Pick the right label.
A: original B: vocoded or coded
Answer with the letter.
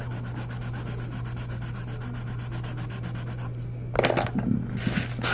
A